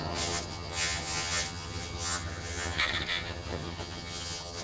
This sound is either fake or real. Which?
fake